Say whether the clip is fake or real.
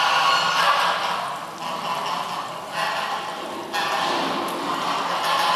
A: real